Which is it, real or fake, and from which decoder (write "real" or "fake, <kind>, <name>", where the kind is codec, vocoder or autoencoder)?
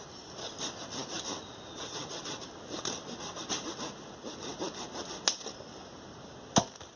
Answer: real